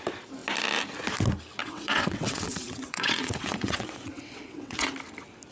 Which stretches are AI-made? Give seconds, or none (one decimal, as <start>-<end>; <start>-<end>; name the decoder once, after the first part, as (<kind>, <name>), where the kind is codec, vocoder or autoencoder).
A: 1.6-4.9 (vocoder, WaveNeXt)